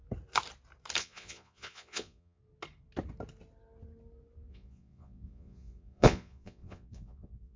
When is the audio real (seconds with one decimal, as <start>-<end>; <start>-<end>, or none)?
0.0-1.0; 2.4-4.5